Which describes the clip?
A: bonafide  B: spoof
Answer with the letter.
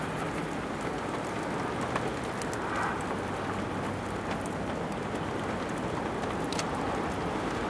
A